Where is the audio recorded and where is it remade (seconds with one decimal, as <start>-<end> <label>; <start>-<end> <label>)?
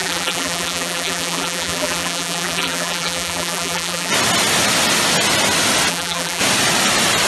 0.0-4.1 remade; 4.1-5.9 recorded; 5.9-6.4 remade; 6.4-7.3 recorded